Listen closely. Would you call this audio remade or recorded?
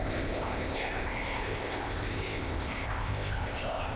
remade